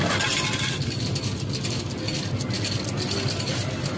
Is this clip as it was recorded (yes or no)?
yes